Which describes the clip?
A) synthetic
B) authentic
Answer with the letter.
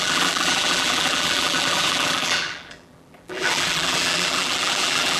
A